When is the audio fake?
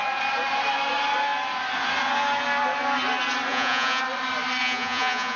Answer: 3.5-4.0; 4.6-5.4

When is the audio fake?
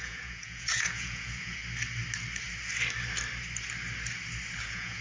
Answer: 0.0-1.6; 4.6-5.0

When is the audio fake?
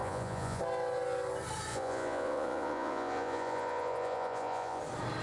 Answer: 0.0-0.6; 1.7-4.8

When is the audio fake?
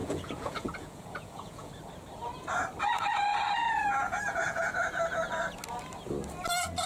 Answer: 0.0-1.7; 3.6-4.7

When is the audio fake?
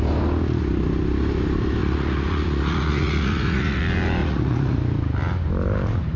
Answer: 1.8-3.8; 4.2-4.8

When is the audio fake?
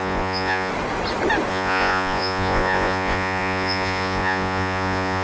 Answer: 0.0-0.7; 1.5-5.2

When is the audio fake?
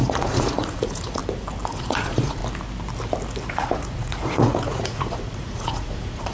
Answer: 0.0-1.2; 1.7-2.4; 3.5-6.3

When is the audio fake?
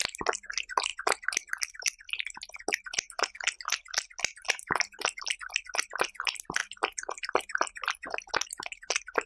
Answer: none